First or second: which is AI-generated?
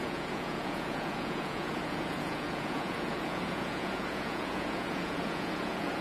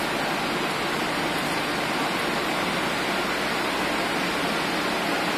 first